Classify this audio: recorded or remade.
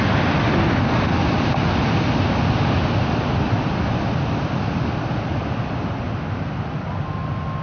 recorded